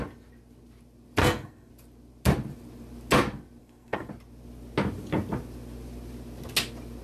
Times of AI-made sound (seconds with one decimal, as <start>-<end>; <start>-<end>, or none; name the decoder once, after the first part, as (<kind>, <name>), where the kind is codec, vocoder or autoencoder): 1.2-1.7 (codec, SNAC); 3.6-4.1